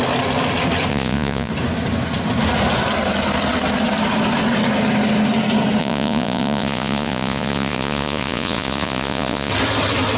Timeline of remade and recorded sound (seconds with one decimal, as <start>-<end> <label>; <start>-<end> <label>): 0.0-0.9 recorded; 0.9-1.5 remade; 1.5-5.8 recorded; 5.8-9.5 remade; 9.5-10.2 recorded